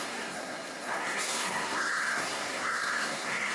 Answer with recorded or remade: remade